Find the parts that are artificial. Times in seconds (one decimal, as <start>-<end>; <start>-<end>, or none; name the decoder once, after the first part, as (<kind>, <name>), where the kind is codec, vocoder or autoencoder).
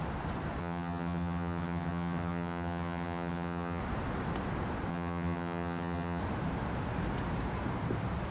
0.6-3.8 (vocoder, HiFi-GAN); 4.9-6.2